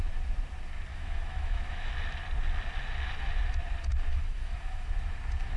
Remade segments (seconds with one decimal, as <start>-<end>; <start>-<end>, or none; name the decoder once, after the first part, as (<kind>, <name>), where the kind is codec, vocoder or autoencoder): 0.9-1.9 (autoencoder, DAC-VAE); 4.1-4.9